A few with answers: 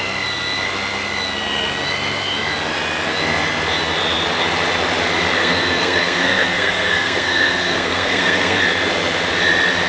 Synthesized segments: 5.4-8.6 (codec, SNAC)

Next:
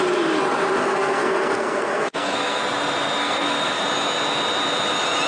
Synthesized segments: 0.8-2.6 (codec, SNAC); 3.2-3.8

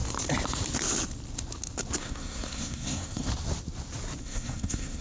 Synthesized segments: 2.0-3.3 (codec, SNAC); 4.2-5.0

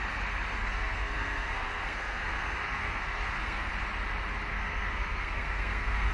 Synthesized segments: 0.6-3.7 (codec, SNAC); 4.5-6.1